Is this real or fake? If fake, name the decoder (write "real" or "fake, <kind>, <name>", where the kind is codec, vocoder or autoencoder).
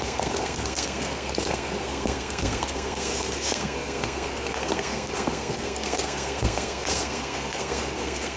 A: fake, codec, SNAC